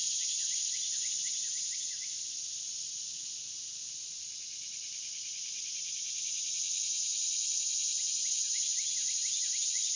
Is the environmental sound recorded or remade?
recorded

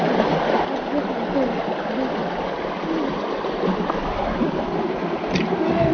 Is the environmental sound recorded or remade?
recorded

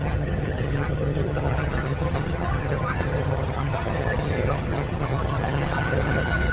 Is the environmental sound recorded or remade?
remade